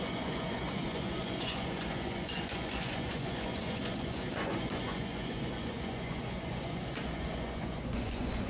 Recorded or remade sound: remade